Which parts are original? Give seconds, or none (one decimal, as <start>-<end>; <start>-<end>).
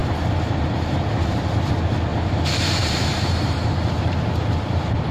1.5-2.1; 3.7-5.1